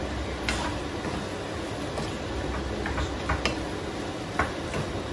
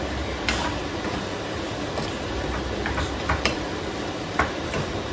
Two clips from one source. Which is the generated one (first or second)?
second